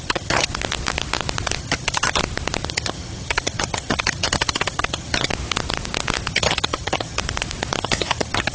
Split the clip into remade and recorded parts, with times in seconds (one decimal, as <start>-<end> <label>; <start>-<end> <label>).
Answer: 0.0-0.5 remade; 0.5-1.6 recorded; 1.6-2.2 remade; 2.2-2.7 recorded; 2.7-5.3 remade; 5.3-6.3 recorded; 6.3-7.2 remade; 7.2-7.8 recorded; 7.8-8.5 remade